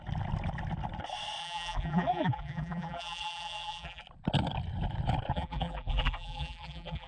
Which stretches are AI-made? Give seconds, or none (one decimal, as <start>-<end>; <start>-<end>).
1.4-4.0; 5.3-7.1